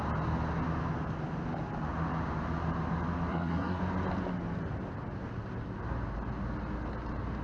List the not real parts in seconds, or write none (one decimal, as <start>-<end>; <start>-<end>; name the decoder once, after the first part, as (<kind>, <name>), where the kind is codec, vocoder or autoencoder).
3.3-3.8 (codec, SNAC)